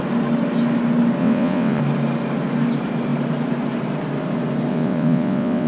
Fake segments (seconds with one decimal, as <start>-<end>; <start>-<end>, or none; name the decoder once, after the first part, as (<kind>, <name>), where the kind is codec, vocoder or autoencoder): 1.2-1.8 (vocoder, WaveNeXt); 4.7-5.7

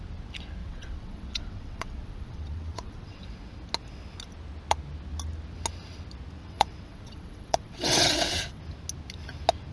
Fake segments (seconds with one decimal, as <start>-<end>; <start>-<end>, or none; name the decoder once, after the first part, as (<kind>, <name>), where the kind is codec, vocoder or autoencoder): 0.6-3.2 (vocoder, WaveNeXt); 6.4-8.6

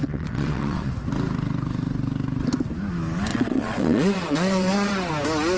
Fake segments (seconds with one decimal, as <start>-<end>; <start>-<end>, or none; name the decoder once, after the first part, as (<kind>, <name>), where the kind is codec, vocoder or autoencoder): 0.0-0.9 (vocoder, WaveNeXt); 3.3-5.1